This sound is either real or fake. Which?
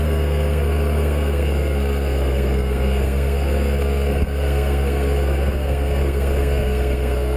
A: fake